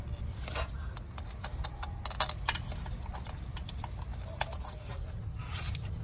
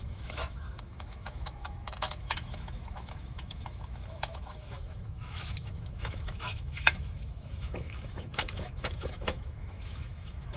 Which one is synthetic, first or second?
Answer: second